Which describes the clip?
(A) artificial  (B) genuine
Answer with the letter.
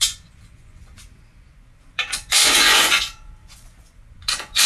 A